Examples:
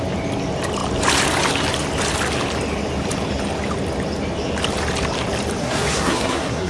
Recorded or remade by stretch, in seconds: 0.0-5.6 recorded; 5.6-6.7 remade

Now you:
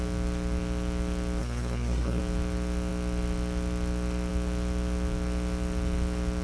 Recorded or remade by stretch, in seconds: 0.0-1.4 recorded; 1.4-2.2 remade; 2.2-6.4 recorded

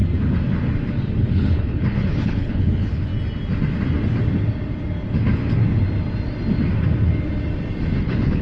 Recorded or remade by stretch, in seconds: 0.0-1.2 recorded; 1.2-3.1 remade; 3.1-8.0 recorded; 8.0-8.4 remade

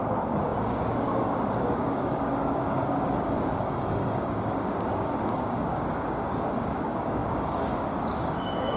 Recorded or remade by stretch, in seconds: 0.0-8.8 remade

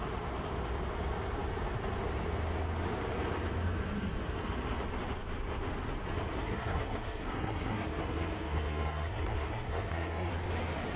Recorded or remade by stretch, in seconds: 0.0-6.4 recorded; 6.4-10.3 remade; 10.3-11.0 recorded